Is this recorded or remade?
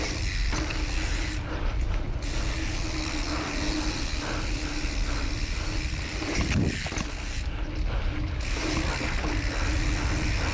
recorded